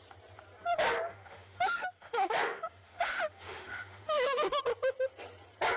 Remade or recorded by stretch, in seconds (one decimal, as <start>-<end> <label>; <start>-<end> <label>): 0.0-1.1 recorded; 1.1-4.6 remade; 4.6-5.8 recorded